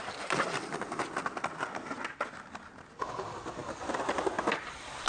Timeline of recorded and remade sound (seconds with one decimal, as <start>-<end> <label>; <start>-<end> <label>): 0.0-5.1 recorded